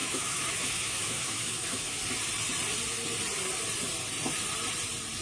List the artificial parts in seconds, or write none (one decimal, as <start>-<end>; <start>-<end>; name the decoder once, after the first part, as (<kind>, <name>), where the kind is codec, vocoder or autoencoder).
0.0-2.0 (autoencoder, DAC-VAE)